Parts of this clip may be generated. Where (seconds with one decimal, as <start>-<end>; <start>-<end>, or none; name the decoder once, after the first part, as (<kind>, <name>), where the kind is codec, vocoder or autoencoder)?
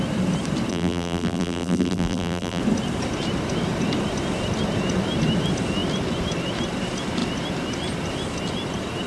0.7-2.6 (vocoder, BigVGAN v2)